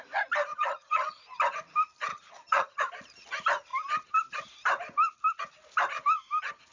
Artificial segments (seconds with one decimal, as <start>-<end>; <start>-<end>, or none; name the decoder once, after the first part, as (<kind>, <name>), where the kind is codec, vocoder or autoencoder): 0.5-1.2 (vocoder, HiFi-GAN); 2.1-2.8